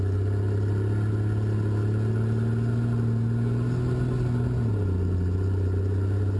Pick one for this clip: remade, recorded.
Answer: recorded